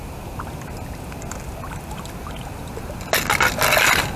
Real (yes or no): yes